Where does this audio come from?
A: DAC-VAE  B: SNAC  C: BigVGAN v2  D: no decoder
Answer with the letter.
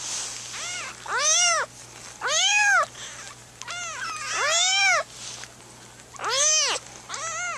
D